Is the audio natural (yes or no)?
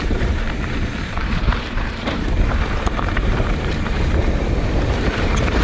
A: no